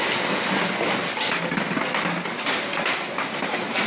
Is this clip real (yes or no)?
yes